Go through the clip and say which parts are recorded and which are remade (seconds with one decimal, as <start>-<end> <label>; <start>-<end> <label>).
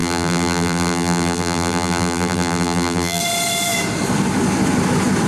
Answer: 0.0-3.2 remade; 3.2-5.3 recorded